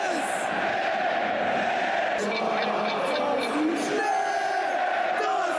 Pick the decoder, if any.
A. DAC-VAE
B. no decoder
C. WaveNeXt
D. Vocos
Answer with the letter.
B